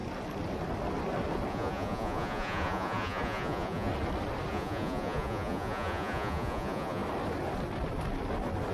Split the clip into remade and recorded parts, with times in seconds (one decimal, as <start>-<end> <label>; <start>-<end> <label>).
0.0-1.5 recorded; 1.5-3.9 remade; 3.9-4.5 recorded; 4.5-7.0 remade; 7.0-8.7 recorded